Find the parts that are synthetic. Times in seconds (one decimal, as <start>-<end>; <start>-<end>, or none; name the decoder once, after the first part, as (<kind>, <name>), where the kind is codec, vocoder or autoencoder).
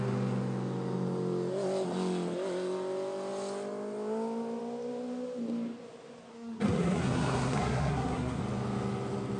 6.3-8.4 (codec, SNAC)